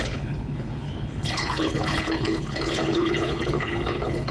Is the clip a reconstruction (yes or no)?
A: yes